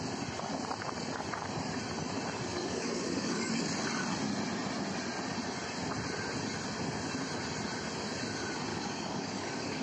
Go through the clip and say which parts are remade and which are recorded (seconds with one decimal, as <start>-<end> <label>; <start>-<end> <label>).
0.0-2.5 recorded; 2.5-3.5 remade; 3.5-8.7 recorded; 8.7-9.8 remade